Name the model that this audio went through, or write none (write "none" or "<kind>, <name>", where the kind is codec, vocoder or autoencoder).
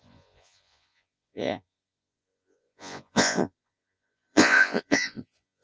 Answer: vocoder, Vocos